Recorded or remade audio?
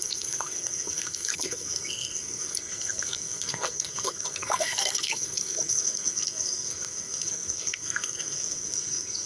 remade